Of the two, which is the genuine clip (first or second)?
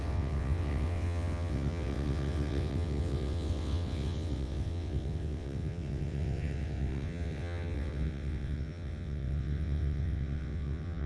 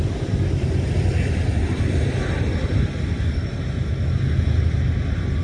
second